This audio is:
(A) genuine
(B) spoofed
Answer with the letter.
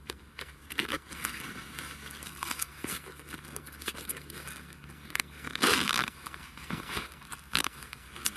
B